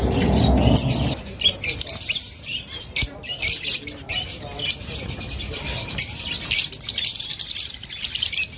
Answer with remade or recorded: recorded